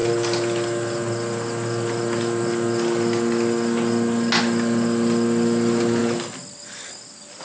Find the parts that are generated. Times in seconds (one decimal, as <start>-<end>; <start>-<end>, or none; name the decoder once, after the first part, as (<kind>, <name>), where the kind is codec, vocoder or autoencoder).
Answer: none